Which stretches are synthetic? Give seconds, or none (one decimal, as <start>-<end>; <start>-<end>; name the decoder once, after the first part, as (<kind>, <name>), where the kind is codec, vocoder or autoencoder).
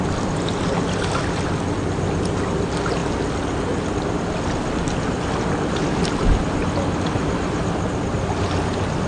none